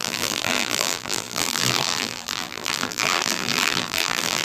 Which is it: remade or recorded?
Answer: remade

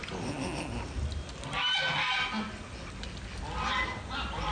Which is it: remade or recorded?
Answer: recorded